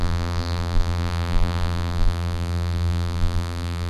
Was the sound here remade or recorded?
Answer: remade